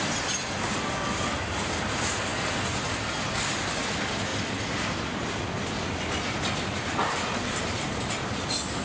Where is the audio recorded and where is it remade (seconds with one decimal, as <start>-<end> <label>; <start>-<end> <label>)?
0.0-8.8 recorded